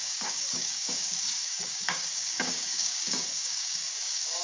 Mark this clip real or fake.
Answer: fake